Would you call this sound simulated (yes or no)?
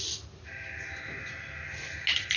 no